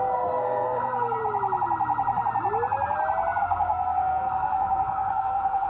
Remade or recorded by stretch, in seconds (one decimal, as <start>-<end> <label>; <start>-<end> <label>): 0.0-1.2 remade; 1.2-3.4 recorded; 3.4-5.7 remade